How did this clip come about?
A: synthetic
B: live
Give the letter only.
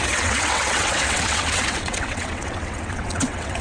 A